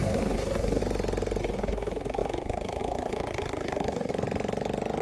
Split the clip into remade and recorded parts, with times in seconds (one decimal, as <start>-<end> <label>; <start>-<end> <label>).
0.0-0.8 remade; 0.8-1.4 recorded; 1.4-4.1 remade; 4.1-5.0 recorded